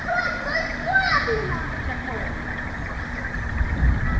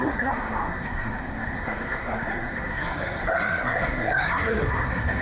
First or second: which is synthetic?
second